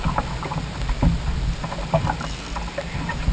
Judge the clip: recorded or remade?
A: recorded